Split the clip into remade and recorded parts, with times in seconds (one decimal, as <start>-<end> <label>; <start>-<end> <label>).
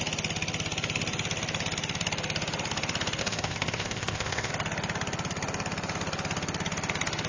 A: 0.0-3.2 recorded; 3.2-4.5 remade; 4.5-7.3 recorded